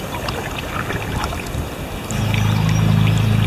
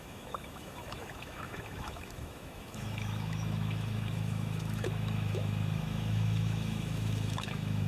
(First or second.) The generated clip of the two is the second